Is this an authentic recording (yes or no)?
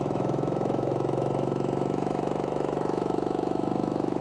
no